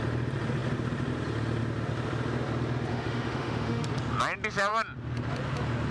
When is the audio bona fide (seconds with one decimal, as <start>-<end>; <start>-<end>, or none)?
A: 0.0-2.9; 3.9-5.9